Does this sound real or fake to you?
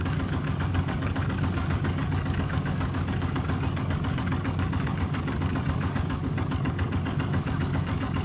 fake